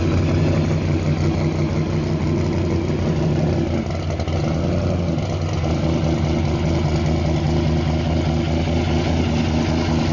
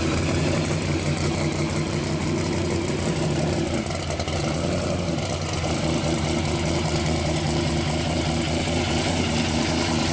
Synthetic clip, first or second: second